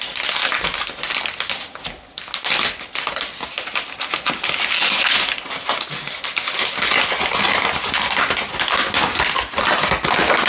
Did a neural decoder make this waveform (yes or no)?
no